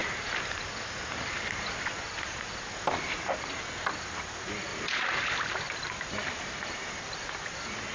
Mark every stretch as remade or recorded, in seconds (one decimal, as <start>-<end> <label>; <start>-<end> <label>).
0.0-0.7 remade; 0.7-4.7 recorded; 4.7-7.3 remade; 7.3-7.9 recorded